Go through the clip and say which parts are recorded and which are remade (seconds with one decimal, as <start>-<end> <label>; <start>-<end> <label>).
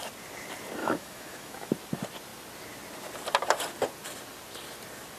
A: 0.0-0.8 recorded; 0.8-1.7 remade; 1.7-5.2 recorded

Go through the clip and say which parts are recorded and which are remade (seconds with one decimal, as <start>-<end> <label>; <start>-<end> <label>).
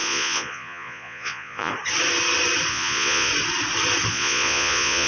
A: 0.0-1.7 remade; 1.7-2.7 recorded; 2.7-3.3 remade; 3.3-4.1 recorded; 4.1-5.1 remade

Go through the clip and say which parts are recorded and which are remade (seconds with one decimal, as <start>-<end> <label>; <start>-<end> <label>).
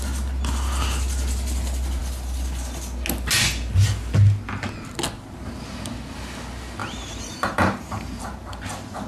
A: 0.0-6.8 recorded; 6.8-8.6 remade; 8.6-9.1 recorded